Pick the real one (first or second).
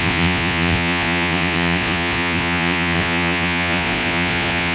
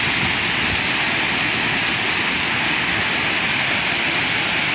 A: second